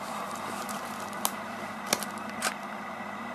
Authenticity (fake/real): real